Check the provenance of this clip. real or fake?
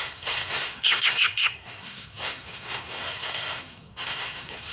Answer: fake